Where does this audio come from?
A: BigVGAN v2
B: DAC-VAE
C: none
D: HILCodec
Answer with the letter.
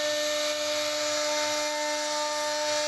C